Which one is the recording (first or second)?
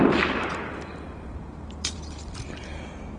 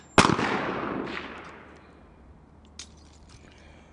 second